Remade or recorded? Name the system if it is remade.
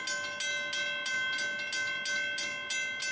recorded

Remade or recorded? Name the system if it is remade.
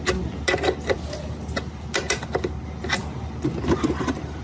recorded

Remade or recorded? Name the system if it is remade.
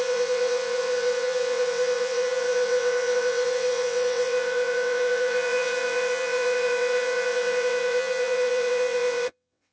remade, vocoder, WaveNeXt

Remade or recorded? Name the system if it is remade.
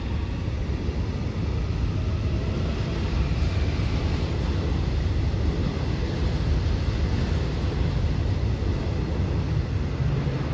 recorded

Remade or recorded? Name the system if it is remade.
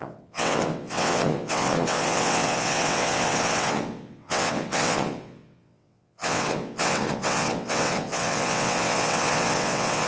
remade, vocoder, WaveNeXt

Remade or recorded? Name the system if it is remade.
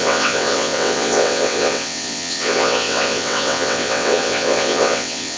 remade, vocoder, WaveNeXt